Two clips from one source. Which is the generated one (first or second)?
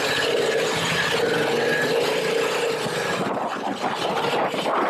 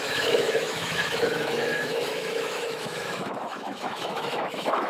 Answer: second